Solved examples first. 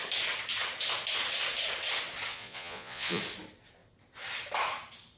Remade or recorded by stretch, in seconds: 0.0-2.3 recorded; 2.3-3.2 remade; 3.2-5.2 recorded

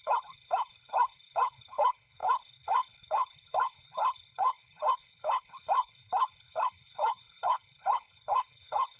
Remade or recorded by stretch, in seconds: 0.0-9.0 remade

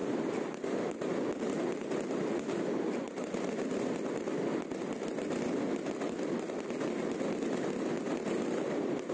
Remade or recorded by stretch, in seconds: 0.0-9.1 recorded

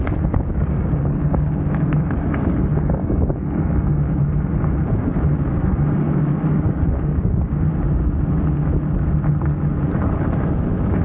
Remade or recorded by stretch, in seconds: 0.0-0.5 recorded; 0.5-4.2 remade; 4.2-5.5 recorded; 5.5-7.7 remade; 7.7-11.0 recorded

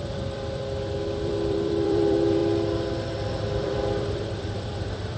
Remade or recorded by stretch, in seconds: 0.0-0.6 remade; 0.6-1.2 recorded; 1.2-2.4 remade; 2.4-3.3 recorded; 3.3-5.2 remade

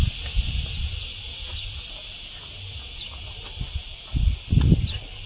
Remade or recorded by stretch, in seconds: 0.0-5.3 recorded

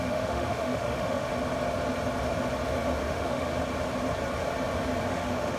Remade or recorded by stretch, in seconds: 0.0-1.3 remade; 1.3-3.0 recorded; 3.0-3.5 remade; 3.5-5.1 recorded; 5.1-5.6 remade

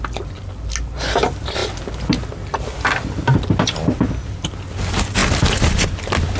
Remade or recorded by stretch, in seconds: 0.0-6.4 recorded